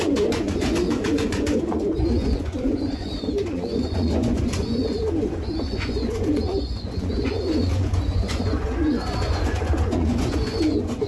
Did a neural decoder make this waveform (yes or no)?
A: yes